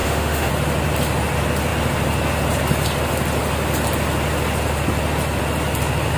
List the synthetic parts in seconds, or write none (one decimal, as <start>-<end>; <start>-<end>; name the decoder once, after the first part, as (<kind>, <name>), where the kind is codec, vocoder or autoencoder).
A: 0.0-0.5 (autoencoder, DAC-VAE)